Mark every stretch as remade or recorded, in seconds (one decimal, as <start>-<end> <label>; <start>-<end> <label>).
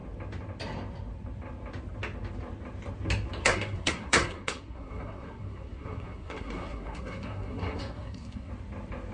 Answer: 0.0-3.4 recorded; 3.4-8.5 remade; 8.5-9.1 recorded